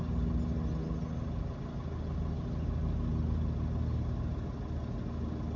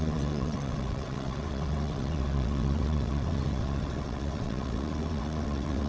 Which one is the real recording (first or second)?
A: first